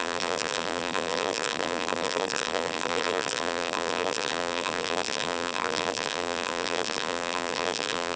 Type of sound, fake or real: fake